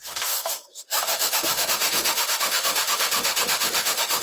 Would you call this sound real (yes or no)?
no